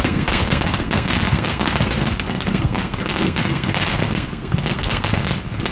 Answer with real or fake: fake